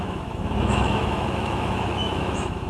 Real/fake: fake